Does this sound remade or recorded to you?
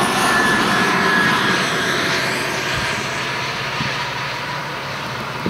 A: remade